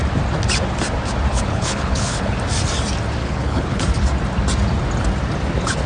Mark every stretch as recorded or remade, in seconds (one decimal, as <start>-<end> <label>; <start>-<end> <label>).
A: 0.0-1.3 recorded; 1.3-2.3 remade; 2.3-3.2 recorded; 3.2-3.8 remade; 3.8-5.9 recorded

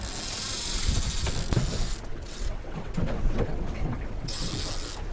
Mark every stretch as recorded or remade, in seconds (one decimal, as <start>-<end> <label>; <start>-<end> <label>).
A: 0.0-2.1 recorded; 2.1-4.5 remade; 4.5-5.1 recorded

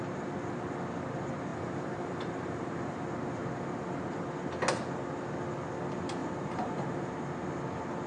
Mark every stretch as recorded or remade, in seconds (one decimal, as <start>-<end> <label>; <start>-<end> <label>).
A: 0.0-1.5 recorded; 1.5-3.0 remade; 3.0-6.2 recorded; 6.2-7.1 remade; 7.1-8.1 recorded